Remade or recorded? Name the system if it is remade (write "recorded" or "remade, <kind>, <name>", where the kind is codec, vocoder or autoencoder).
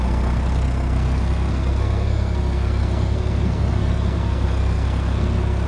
remade, codec, SNAC